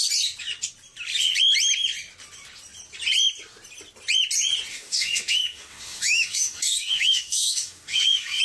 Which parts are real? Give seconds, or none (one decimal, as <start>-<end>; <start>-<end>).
0.0-4.7